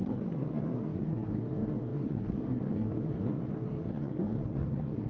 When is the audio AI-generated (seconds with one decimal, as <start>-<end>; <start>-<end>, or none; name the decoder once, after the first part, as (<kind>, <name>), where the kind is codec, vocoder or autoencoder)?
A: 0.0-5.1 (codec, SNAC)